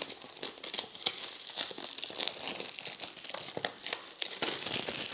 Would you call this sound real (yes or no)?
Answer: yes